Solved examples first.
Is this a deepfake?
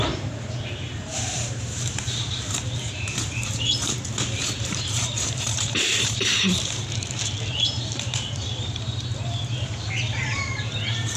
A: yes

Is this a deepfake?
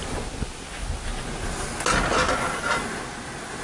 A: no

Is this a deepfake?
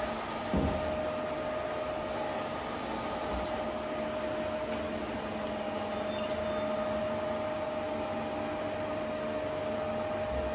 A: no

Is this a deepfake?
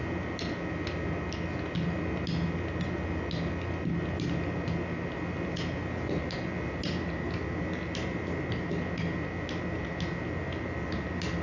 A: no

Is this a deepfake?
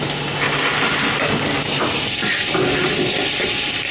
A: no